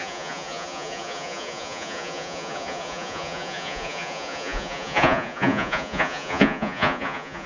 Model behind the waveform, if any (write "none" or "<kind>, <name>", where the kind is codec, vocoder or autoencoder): vocoder, Vocos